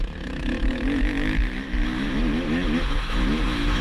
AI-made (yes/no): yes